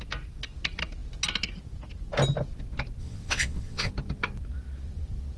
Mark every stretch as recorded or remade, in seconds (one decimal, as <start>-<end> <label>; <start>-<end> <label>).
0.0-3.0 recorded; 3.0-3.9 remade; 3.9-5.4 recorded